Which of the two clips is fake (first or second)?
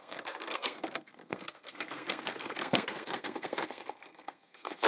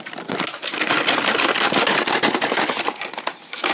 first